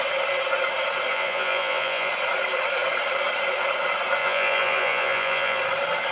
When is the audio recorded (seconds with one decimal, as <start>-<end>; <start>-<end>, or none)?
0.0-1.1; 2.1-4.2; 5.6-6.1